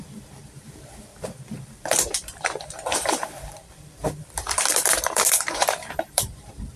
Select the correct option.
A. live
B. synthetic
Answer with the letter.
B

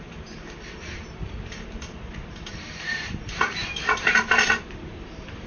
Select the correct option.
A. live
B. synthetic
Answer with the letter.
B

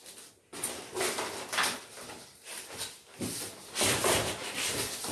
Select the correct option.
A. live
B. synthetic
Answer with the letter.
A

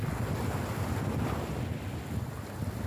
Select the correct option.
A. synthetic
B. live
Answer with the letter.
B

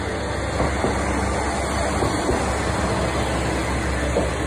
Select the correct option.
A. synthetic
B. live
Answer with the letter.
B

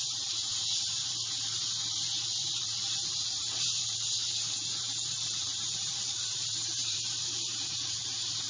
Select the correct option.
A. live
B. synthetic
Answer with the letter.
B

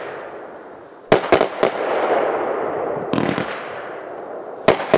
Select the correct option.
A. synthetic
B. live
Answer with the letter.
B